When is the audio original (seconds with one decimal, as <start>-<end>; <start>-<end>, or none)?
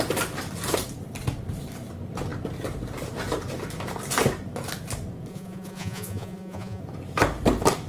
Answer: 0.0-5.3; 6.8-7.9